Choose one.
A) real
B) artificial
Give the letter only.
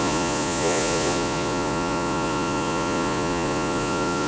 B